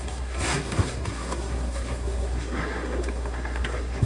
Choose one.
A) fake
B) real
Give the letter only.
A